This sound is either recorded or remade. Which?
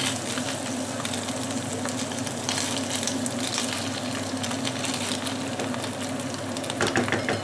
recorded